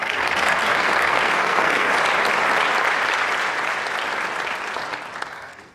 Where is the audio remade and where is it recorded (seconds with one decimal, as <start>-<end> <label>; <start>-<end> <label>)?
0.0-1.9 remade; 1.9-5.3 recorded; 5.3-5.7 remade